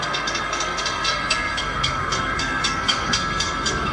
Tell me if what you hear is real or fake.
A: fake